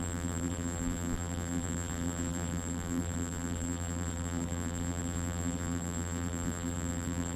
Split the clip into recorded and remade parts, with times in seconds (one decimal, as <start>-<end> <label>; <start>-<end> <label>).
0.0-7.4 remade